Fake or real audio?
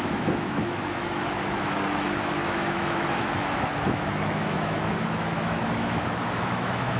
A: fake